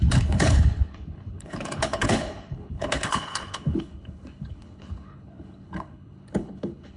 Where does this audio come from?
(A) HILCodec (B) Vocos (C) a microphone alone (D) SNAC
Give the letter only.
A